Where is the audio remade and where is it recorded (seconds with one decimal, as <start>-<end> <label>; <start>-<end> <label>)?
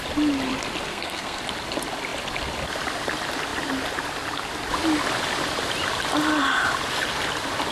0.0-0.9 recorded; 0.9-1.4 remade; 1.4-7.7 recorded